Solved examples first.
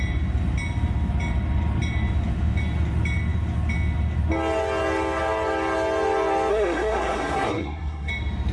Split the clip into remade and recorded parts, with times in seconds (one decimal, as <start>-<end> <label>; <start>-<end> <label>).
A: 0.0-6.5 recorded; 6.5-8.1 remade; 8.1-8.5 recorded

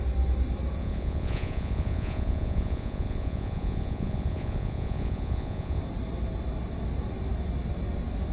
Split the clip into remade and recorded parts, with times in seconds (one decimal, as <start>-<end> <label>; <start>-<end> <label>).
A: 0.0-0.8 recorded; 0.8-5.8 remade; 5.8-8.3 recorded

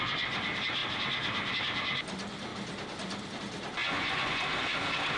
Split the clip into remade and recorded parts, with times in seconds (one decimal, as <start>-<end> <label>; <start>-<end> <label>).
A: 0.0-3.8 recorded; 3.8-4.4 remade; 4.4-5.2 recorded

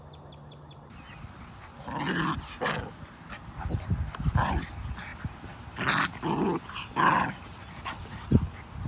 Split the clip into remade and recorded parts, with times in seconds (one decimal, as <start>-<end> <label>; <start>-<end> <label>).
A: 0.0-8.9 recorded